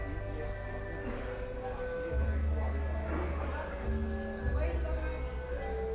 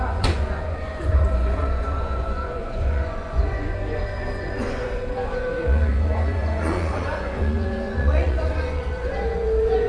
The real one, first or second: first